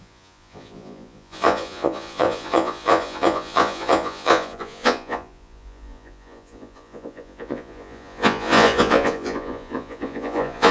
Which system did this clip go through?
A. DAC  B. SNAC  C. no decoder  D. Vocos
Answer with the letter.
D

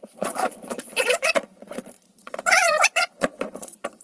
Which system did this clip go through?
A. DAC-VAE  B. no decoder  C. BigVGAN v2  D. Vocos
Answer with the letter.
D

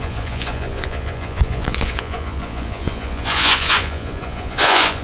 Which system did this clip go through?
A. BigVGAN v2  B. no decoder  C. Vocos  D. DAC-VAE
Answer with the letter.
C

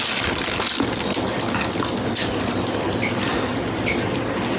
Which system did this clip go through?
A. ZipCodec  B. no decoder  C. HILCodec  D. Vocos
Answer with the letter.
B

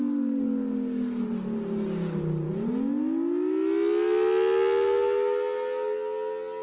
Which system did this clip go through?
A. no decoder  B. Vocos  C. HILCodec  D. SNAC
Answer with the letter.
A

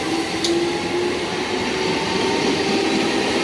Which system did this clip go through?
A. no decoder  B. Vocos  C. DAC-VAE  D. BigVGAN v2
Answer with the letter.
A